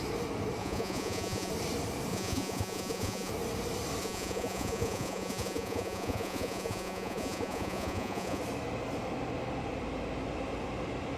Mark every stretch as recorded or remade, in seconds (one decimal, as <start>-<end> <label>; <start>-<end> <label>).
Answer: 0.0-0.6 recorded; 0.6-1.5 remade; 1.5-2.1 recorded; 2.1-3.3 remade; 3.3-4.0 recorded; 4.0-8.4 remade; 8.4-11.2 recorded